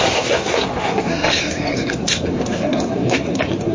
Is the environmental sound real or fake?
fake